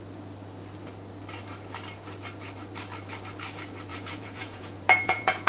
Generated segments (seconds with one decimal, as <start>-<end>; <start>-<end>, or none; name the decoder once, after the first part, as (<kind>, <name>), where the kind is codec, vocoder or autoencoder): 3.9-5.5 (vocoder, Vocos)